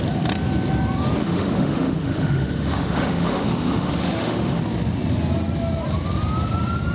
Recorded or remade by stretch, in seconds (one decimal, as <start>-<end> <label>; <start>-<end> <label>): 0.0-1.2 recorded; 1.2-4.6 remade; 4.6-6.9 recorded